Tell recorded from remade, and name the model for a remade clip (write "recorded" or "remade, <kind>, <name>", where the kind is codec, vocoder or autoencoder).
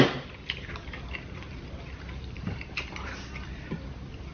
remade, vocoder, BigVGAN v2